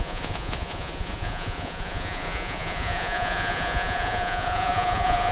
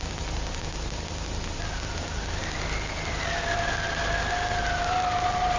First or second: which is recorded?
second